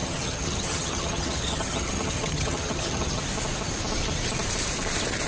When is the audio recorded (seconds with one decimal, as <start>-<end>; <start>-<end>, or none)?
3.2-5.3